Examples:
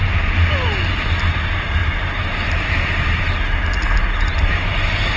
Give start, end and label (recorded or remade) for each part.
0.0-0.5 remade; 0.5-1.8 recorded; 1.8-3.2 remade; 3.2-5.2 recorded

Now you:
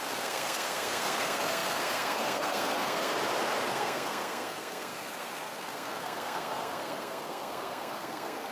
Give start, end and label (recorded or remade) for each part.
0.0-3.1 remade; 3.1-3.7 recorded; 3.7-8.5 remade

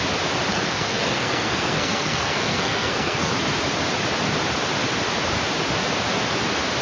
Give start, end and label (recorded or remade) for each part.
0.0-0.5 recorded; 0.5-3.3 remade; 3.3-6.8 recorded

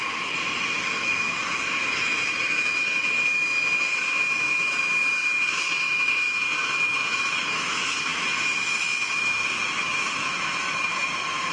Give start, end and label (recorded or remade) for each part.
0.0-11.5 remade

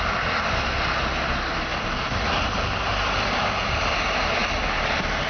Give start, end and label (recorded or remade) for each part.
0.0-5.3 recorded

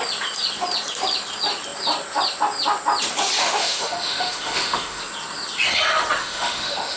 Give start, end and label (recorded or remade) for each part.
0.0-3.4 recorded; 3.4-5.0 remade; 5.0-6.2 recorded; 6.2-7.0 remade

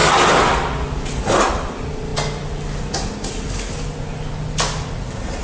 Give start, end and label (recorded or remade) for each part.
0.0-5.4 recorded